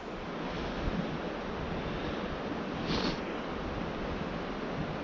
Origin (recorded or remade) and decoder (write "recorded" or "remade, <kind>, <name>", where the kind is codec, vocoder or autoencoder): recorded